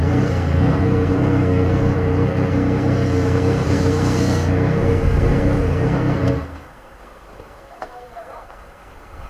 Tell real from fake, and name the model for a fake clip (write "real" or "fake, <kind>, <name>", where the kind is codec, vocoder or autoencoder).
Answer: fake, codec, SNAC